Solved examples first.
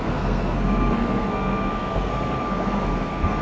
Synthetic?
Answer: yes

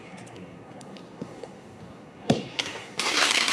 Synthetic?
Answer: yes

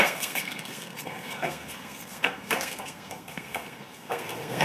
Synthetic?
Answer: yes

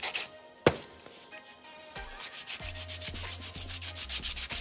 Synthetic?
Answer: no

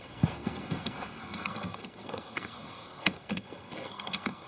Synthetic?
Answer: yes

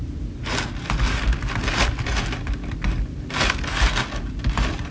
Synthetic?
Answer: no